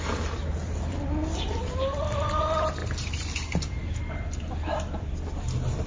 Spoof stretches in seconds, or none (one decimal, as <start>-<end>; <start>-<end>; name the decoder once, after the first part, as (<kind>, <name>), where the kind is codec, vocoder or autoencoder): 0.6-2.4 (vocoder, BigVGAN v2); 2.8-5.9